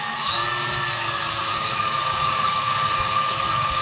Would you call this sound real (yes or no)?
no